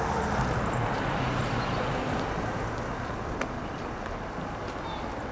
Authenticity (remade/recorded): recorded